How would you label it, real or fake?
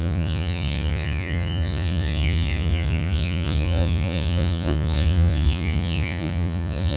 fake